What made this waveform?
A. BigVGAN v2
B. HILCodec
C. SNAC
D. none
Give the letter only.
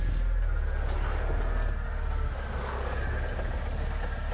D